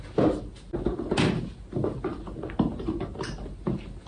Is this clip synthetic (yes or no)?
no